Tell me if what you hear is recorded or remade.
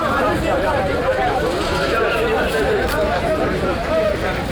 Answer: remade